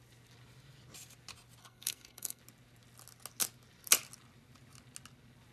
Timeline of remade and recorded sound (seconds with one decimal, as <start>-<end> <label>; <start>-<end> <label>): 0.0-1.6 recorded; 1.6-2.4 remade; 2.4-5.5 recorded

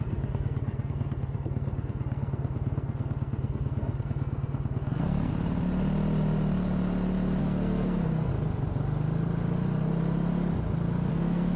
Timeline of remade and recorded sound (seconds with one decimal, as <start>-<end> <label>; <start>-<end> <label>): 0.0-5.3 remade; 5.3-7.4 recorded; 7.4-8.3 remade; 8.3-11.1 recorded; 11.1-11.6 remade

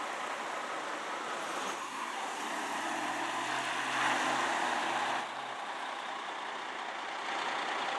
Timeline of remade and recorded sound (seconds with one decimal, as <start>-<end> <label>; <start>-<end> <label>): 0.0-1.8 recorded; 1.8-2.4 remade; 2.4-8.0 recorded

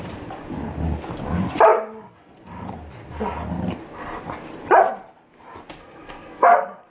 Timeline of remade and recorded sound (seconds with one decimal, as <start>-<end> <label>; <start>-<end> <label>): 0.0-5.8 recorded; 5.8-6.9 remade